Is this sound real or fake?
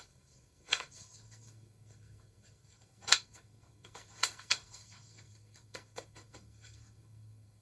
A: fake